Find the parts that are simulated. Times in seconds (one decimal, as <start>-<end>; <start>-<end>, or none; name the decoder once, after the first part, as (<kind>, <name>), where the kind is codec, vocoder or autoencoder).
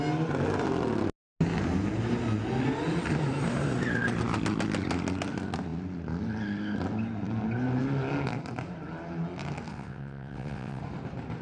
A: 9.7-10.8 (vocoder, WaveNeXt)